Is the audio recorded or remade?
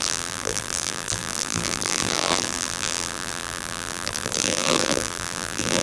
remade